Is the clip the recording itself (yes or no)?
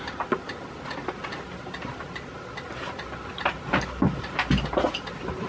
yes